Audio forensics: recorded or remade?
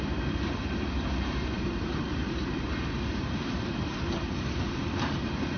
remade